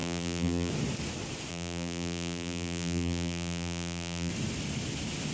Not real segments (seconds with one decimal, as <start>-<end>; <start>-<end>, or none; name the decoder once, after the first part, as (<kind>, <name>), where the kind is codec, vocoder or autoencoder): 0.0-0.7 (vocoder, BigVGAN v2); 1.5-4.3